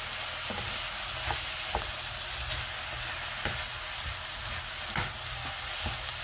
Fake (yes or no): no